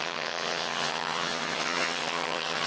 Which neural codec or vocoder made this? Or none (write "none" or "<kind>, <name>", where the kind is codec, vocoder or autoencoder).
vocoder, HiFi-GAN